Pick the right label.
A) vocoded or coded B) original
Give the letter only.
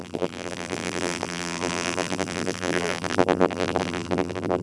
A